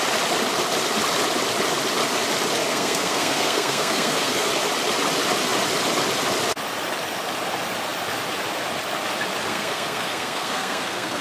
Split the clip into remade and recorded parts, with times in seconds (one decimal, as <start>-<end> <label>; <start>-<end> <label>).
0.0-2.7 recorded; 2.7-4.5 remade; 4.5-9.5 recorded; 9.5-11.2 remade